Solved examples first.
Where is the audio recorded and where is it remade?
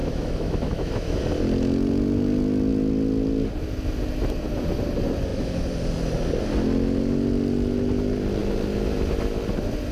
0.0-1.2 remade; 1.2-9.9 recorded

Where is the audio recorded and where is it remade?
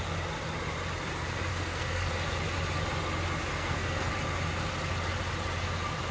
0.0-1.5 recorded; 1.5-2.1 remade; 2.1-3.5 recorded; 3.5-4.1 remade; 4.1-6.1 recorded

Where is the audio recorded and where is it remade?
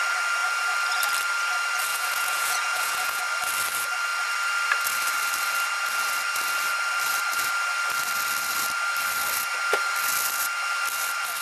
0.0-1.9 recorded; 1.9-3.2 remade; 3.2-11.4 recorded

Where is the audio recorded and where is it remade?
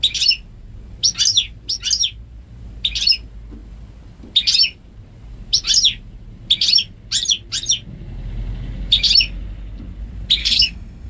0.0-10.4 recorded; 10.4-11.1 remade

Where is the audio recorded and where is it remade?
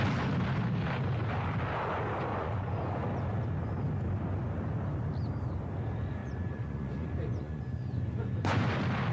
0.0-2.3 recorded; 2.3-3.0 remade; 3.0-6.2 recorded; 6.2-8.7 remade; 8.7-9.1 recorded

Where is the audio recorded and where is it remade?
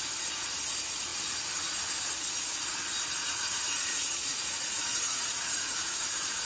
0.0-3.2 recorded; 3.2-6.4 remade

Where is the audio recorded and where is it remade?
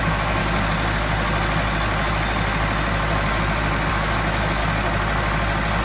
0.0-0.4 remade; 0.4-3.9 recorded; 3.9-4.6 remade; 4.6-5.8 recorded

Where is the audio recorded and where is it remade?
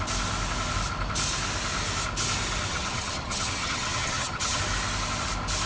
0.0-2.7 recorded; 2.7-4.6 remade; 4.6-5.7 recorded